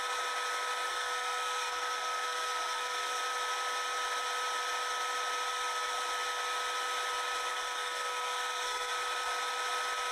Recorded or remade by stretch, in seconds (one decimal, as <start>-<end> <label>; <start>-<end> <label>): 0.0-0.9 recorded; 0.9-3.2 remade; 3.2-7.5 recorded; 7.5-8.9 remade; 8.9-10.1 recorded